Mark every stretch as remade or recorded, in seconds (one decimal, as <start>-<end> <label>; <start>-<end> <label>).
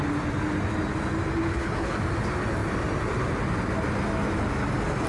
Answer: 0.0-1.4 recorded; 1.4-2.0 remade; 2.0-5.1 recorded